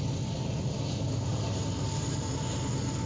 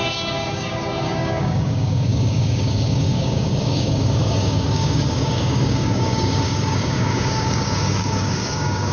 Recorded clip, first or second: first